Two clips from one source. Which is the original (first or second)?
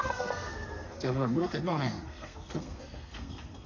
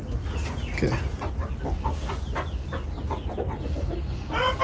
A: second